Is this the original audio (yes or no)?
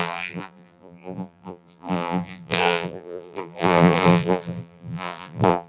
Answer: no